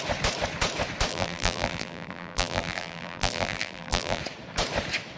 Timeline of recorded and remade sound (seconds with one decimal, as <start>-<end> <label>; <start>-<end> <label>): 0.0-1.1 recorded; 1.1-4.2 remade; 4.2-5.2 recorded